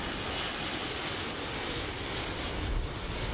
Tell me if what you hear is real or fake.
real